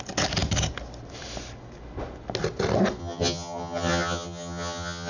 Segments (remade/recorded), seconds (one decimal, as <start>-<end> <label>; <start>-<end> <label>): 0.0-3.0 recorded; 3.0-5.1 remade